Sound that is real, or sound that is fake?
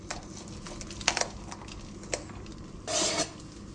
real